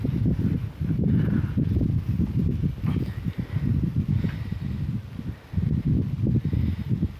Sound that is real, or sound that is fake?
real